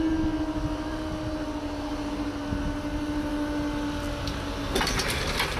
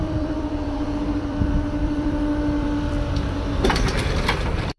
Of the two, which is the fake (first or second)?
second